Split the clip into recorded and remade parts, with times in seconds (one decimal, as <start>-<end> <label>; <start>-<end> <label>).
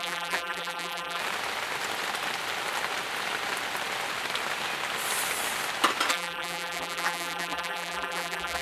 0.0-1.2 remade; 1.2-6.1 recorded; 6.1-8.6 remade